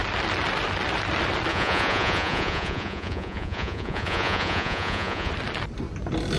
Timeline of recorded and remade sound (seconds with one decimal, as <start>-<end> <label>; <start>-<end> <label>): 0.0-1.5 recorded; 1.5-5.3 remade; 5.3-6.4 recorded

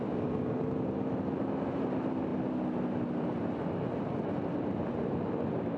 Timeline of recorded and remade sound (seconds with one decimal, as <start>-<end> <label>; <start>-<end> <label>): 0.0-5.8 recorded

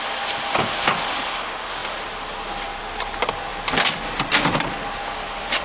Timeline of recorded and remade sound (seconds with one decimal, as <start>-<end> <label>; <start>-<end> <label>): 0.0-5.6 recorded

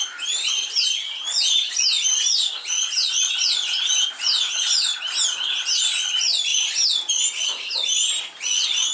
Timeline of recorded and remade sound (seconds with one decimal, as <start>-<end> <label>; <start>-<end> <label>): 0.0-8.9 recorded

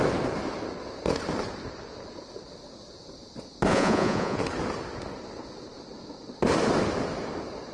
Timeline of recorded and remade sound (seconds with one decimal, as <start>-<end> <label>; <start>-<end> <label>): 0.0-3.7 recorded; 3.7-4.4 remade; 4.4-7.7 recorded

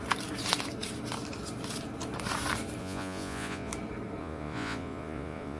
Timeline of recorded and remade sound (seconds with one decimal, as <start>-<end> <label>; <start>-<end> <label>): 0.0-2.8 recorded; 2.8-3.7 remade; 3.7-4.2 recorded; 4.2-5.6 remade

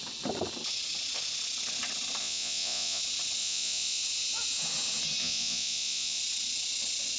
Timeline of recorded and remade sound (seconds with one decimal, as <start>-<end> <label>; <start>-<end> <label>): 0.0-2.2 recorded; 2.2-3.0 remade; 3.0-3.4 recorded; 3.4-4.0 remade; 4.0-5.2 recorded; 5.2-6.2 remade; 6.2-7.2 recorded

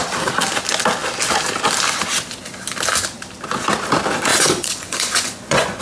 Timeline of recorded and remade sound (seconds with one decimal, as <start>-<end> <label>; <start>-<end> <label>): 0.0-4.3 recorded; 4.3-5.8 remade